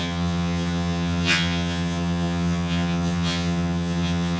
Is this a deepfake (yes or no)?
yes